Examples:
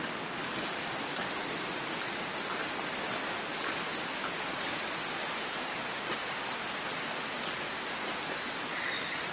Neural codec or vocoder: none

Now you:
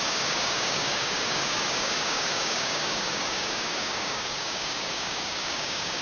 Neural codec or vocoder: codec, DAC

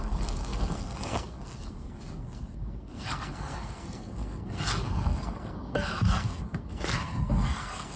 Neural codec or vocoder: codec, SNAC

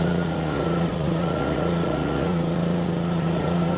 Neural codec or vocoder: vocoder, Vocos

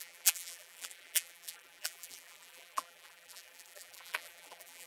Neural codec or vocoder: vocoder, BigVGAN v2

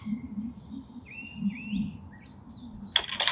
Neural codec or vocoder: none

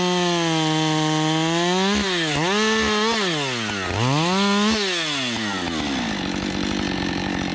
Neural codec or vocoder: none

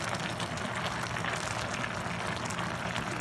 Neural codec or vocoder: none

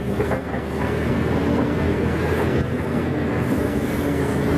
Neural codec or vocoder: codec, SNAC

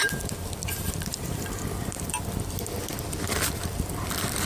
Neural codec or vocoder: vocoder, BigVGAN v2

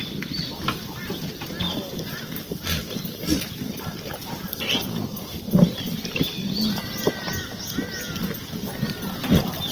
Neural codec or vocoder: none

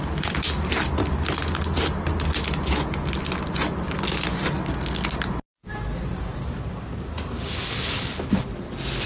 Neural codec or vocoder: none